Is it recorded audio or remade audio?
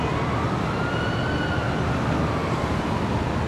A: recorded